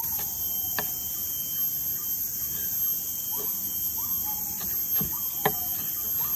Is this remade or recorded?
recorded